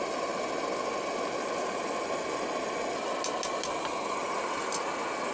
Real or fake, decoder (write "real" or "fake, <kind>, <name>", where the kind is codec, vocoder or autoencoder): real